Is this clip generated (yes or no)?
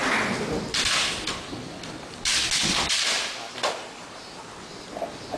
no